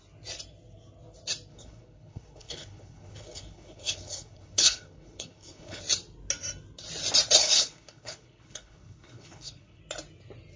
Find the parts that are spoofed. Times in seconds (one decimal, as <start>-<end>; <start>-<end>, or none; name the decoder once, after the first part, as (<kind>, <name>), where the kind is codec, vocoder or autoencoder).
1.5-5.8 (codec, HILCodec); 7.4-9.8